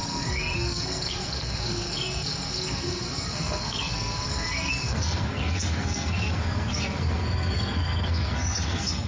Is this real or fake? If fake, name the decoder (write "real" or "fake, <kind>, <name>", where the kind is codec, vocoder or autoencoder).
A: fake, codec, SNAC